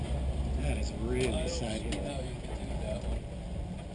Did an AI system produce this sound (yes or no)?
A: no